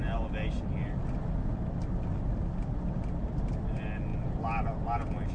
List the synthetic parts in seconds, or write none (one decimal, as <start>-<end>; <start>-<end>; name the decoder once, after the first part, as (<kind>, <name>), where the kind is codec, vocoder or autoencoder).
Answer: none